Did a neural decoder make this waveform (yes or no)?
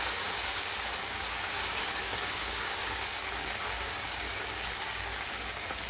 yes